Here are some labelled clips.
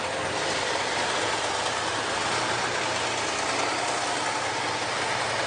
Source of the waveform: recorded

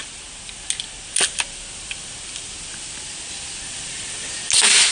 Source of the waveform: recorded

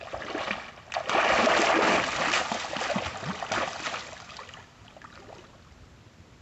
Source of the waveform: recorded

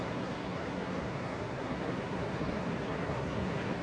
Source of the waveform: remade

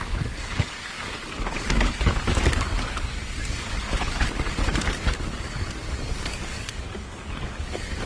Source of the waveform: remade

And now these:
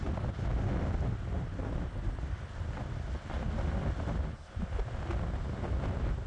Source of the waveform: recorded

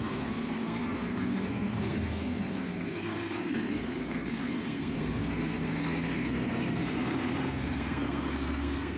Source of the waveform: remade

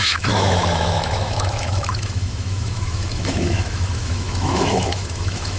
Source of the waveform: remade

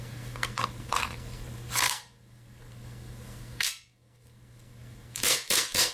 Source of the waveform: remade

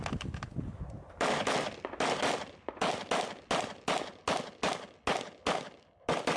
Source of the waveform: recorded